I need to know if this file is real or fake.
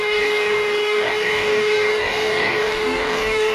fake